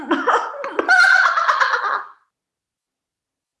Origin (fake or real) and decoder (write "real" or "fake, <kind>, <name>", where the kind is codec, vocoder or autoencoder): real